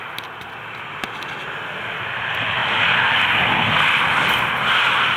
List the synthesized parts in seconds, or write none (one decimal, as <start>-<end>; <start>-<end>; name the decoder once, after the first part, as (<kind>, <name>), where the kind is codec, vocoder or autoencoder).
none